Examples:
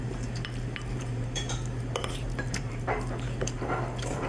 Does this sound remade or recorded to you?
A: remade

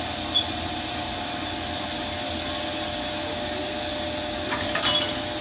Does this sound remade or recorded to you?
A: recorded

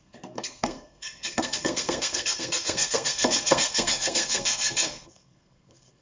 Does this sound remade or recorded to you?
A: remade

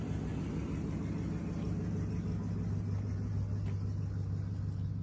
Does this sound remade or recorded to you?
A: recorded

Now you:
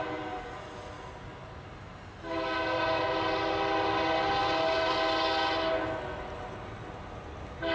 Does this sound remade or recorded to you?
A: recorded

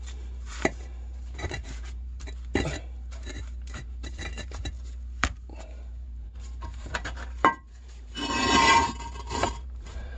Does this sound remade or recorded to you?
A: remade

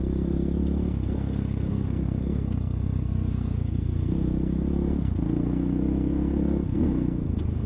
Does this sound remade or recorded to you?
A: remade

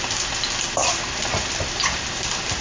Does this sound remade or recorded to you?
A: recorded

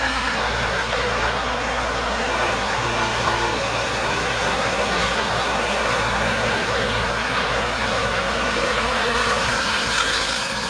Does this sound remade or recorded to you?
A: remade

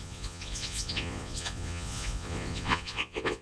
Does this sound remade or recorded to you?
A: remade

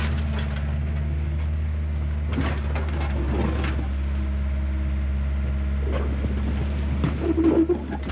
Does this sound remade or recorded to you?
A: recorded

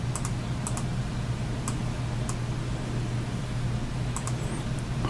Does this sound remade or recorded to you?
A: recorded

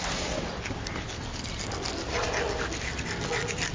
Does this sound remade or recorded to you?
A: recorded